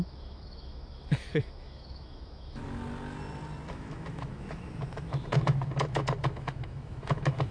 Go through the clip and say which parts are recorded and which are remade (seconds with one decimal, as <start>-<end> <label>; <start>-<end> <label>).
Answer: 0.0-2.6 remade; 2.6-3.7 recorded; 3.7-7.5 remade